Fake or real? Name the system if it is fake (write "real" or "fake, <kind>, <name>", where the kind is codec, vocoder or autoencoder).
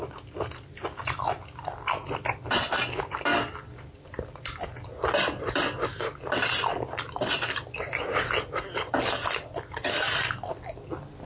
real